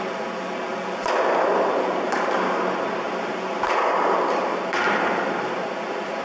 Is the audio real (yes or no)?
yes